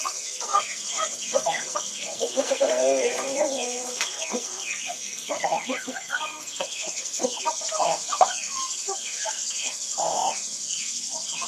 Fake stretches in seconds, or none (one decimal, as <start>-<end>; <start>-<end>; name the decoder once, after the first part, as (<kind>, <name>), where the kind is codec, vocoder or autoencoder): 0.0-11.5 (codec, SNAC)